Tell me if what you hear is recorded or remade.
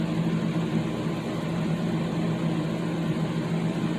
recorded